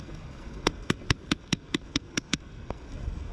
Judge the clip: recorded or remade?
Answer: remade